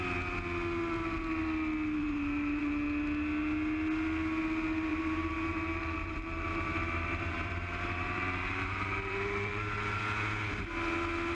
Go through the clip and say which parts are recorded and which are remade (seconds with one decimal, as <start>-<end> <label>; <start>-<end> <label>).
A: 0.0-2.0 recorded; 2.0-2.6 remade; 2.6-4.9 recorded; 4.9-10.0 remade; 10.0-11.3 recorded